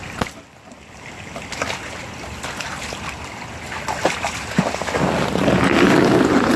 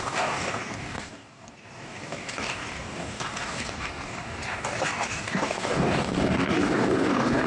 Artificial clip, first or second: second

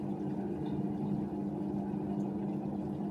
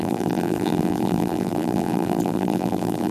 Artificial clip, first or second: second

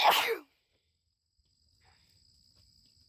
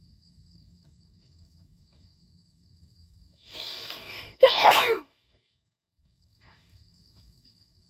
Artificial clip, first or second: second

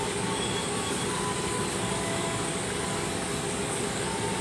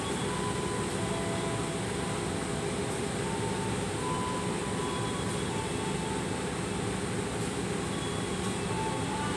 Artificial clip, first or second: first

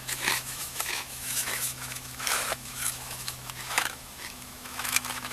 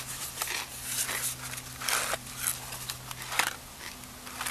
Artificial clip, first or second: first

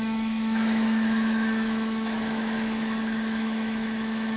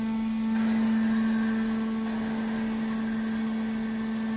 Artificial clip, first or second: first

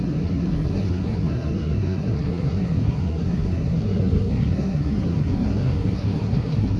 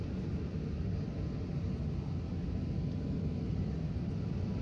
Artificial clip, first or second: first